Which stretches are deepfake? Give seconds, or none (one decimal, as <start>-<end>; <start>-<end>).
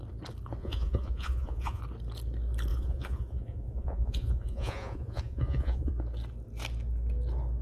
0.6-1.8; 2.7-5.9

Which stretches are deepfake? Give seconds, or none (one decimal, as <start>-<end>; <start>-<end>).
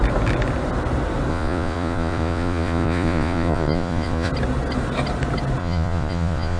1.3-4.3; 5.6-6.6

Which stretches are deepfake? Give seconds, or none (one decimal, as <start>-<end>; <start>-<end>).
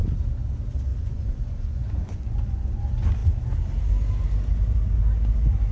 0.9-2.7